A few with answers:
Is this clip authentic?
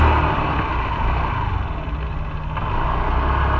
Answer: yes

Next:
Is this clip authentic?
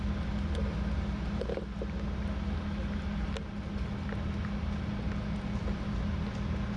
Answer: yes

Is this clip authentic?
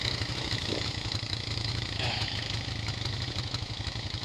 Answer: no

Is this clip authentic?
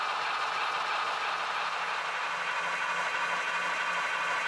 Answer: yes